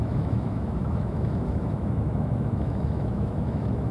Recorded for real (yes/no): no